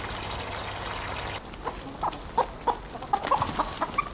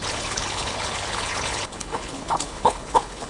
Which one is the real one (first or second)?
first